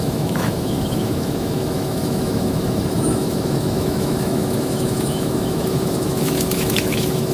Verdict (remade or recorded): remade